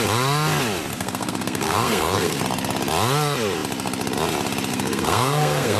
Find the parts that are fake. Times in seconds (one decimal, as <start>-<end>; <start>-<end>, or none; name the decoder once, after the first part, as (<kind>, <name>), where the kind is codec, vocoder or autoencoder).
0.9-2.4 (codec, SNAC); 4.7-5.8